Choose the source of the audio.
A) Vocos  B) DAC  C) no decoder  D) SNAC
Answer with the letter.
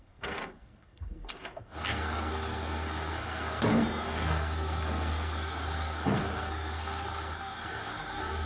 D